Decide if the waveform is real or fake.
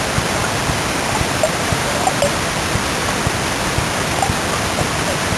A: real